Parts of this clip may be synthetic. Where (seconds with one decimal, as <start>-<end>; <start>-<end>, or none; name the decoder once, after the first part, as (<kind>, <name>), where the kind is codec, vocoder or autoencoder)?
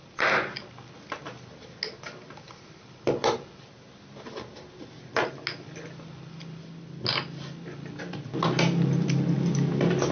none